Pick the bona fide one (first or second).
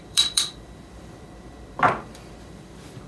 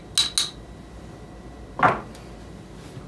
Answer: second